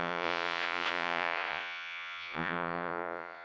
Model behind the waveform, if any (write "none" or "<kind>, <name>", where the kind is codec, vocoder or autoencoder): vocoder, Vocos